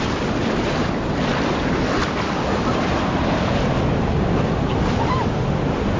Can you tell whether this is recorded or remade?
recorded